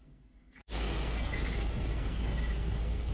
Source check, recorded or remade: remade